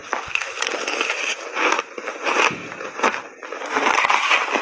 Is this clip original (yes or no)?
yes